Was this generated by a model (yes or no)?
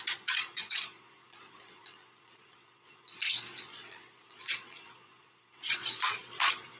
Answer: yes